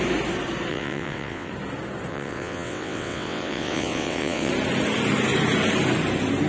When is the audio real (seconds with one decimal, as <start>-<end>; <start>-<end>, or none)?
0.0-0.7; 1.5-2.1; 4.5-6.5